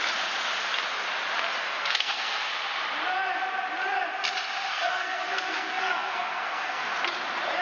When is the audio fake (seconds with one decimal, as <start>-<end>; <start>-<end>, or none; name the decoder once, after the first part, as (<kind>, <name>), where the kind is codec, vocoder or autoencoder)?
1.6-2.5 (codec, SNAC); 4.7-6.9